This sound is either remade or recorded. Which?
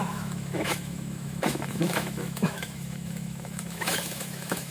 remade